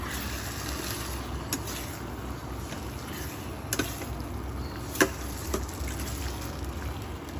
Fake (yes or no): no